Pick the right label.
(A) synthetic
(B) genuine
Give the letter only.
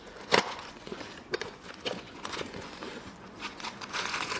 A